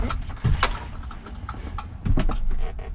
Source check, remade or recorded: recorded